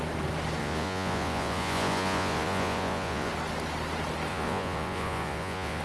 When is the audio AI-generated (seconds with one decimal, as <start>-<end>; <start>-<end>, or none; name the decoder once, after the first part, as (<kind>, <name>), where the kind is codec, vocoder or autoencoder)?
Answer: 0.6-3.3 (vocoder, Vocos); 4.3-5.8